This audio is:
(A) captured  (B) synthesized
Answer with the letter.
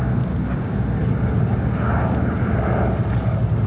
A